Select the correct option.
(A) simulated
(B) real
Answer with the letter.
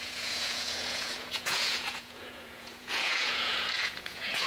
A